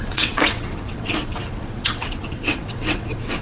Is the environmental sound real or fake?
fake